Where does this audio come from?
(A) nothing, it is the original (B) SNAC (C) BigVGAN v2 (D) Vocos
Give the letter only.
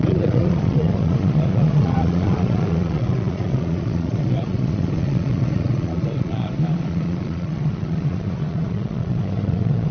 D